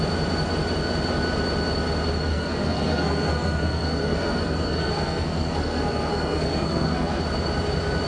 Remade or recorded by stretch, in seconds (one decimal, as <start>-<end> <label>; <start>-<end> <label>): 0.0-2.3 recorded; 2.3-7.2 remade; 7.2-8.1 recorded